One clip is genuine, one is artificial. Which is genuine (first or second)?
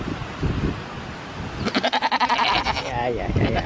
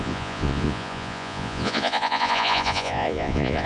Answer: first